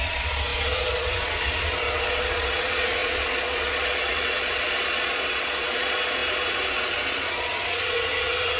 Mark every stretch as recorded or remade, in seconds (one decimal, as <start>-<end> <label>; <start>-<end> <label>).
0.0-8.6 remade